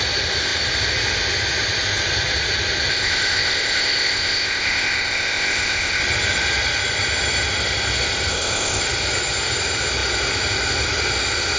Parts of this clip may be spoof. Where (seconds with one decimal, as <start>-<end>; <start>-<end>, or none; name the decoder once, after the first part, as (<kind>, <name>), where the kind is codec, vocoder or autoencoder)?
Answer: 2.9-6.0 (codec, ZipCodec); 8.3-8.8